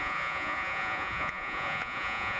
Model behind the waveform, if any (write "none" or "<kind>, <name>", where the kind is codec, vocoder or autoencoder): vocoder, Vocos